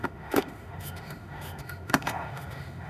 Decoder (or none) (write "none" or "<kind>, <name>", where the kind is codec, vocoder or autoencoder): autoencoder, DAC-VAE